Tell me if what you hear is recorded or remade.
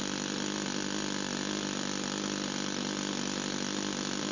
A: recorded